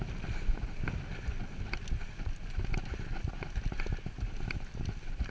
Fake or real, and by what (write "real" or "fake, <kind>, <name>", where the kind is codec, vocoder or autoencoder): real